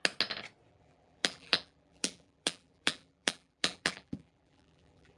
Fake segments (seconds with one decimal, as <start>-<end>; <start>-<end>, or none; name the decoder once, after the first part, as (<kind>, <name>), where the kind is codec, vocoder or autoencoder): 0.7-5.2 (vocoder, BigVGAN v2)